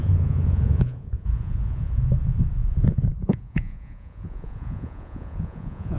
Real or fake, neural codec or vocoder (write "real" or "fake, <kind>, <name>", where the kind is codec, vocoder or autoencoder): fake, vocoder, Vocos